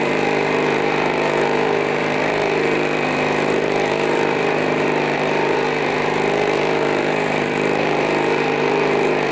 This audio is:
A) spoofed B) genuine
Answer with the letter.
A